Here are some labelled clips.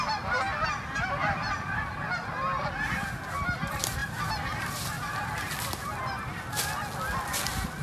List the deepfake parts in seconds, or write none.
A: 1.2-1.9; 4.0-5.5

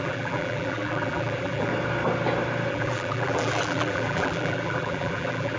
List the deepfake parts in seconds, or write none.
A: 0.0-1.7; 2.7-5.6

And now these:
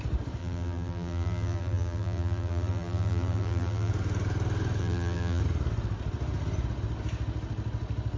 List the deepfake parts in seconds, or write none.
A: 0.4-3.9; 4.8-5.4

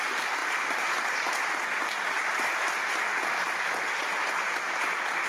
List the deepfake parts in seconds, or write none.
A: none

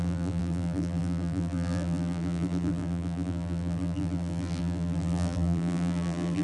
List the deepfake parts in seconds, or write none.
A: 0.0-6.4

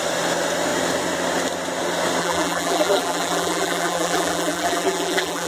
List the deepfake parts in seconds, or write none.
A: 2.2-5.5

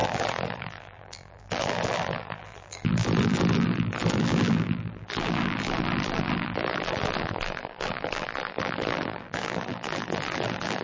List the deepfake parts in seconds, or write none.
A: 0.0-10.8